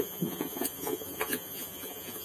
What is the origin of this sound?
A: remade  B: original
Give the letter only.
A